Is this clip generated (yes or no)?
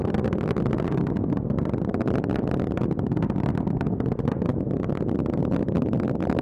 yes